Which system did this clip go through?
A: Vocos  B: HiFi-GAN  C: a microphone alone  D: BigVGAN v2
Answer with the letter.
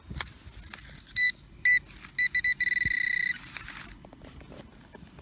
C